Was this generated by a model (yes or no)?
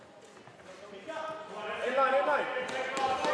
no